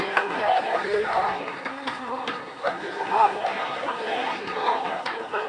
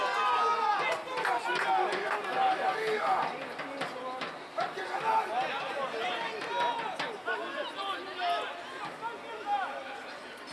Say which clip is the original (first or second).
second